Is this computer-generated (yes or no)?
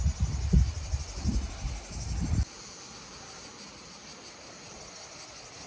no